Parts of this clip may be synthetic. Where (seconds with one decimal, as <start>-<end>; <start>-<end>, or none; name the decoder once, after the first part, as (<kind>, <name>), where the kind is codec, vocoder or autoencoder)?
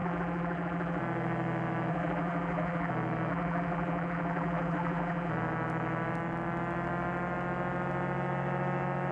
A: 0.0-1.0 (vocoder, BigVGAN v2); 1.9-2.9; 3.3-5.3